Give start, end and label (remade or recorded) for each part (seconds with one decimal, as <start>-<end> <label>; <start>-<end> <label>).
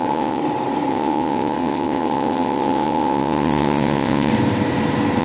0.0-0.4 remade; 0.4-0.9 recorded; 0.9-4.3 remade; 4.3-5.2 recorded